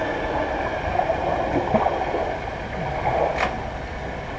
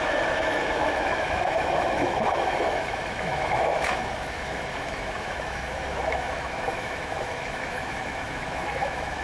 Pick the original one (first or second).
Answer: first